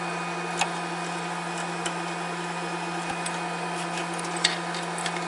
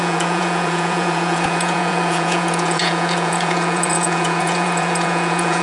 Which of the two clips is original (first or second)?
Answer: first